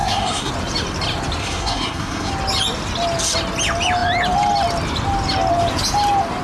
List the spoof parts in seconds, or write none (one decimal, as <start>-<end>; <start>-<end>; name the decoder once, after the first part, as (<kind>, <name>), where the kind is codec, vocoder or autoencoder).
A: 0.0-0.5 (codec, SNAC); 1.4-2.3